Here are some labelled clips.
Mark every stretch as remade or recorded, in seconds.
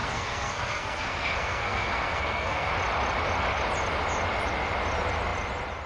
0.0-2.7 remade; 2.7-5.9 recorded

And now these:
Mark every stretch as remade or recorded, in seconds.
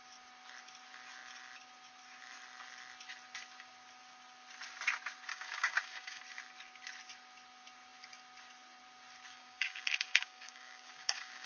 0.0-5.3 recorded; 5.3-6.2 remade; 6.2-9.3 recorded; 9.3-11.5 remade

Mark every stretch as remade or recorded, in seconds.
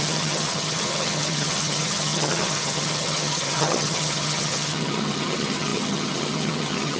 0.0-7.0 remade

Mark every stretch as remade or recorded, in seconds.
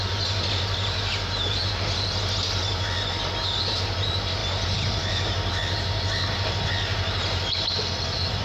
0.0-8.4 recorded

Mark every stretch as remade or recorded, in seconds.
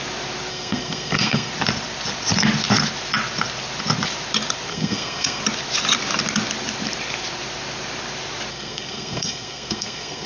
0.0-0.5 recorded; 0.5-1.5 remade; 1.5-4.7 recorded; 4.7-5.4 remade; 5.4-8.5 recorded; 8.5-10.3 remade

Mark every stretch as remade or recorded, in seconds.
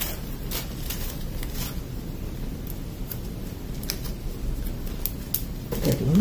0.0-6.2 recorded